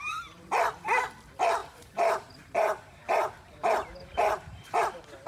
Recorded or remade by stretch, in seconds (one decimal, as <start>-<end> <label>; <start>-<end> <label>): 0.0-1.6 recorded; 1.6-4.8 remade; 4.8-5.3 recorded